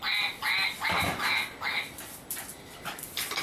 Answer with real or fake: real